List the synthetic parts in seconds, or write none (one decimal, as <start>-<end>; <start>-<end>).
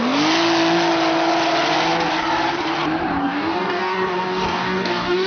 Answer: 3.2-5.3